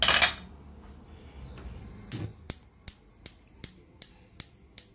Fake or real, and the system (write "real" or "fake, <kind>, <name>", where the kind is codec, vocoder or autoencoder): real